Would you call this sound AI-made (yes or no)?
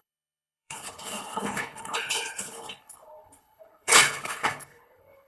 yes